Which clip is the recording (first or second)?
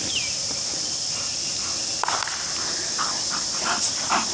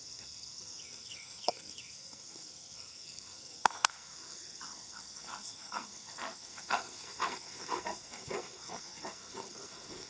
first